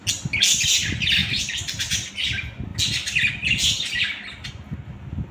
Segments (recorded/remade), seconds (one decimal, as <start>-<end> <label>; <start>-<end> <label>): 0.0-1.2 recorded; 1.2-2.1 remade; 2.1-5.3 recorded